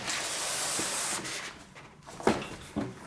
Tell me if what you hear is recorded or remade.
remade